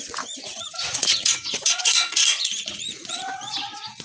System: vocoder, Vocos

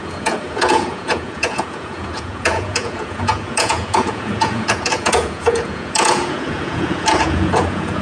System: vocoder, Vocos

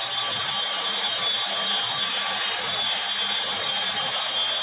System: none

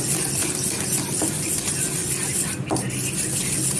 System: none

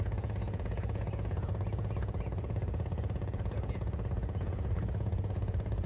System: vocoder, Vocos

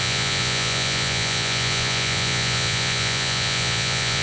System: vocoder, Vocos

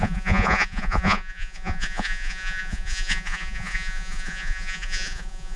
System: vocoder, Vocos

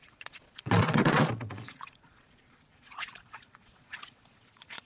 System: vocoder, Vocos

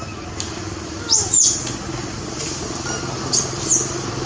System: none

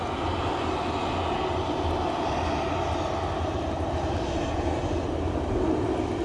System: none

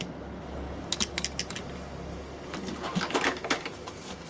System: none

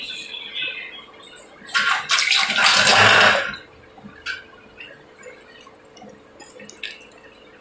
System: none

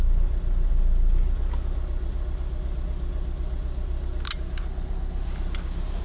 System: none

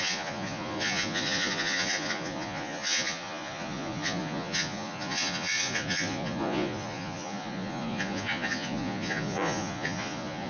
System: vocoder, Vocos